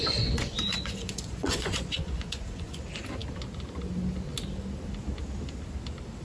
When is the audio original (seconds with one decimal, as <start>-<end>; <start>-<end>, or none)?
2.8-6.2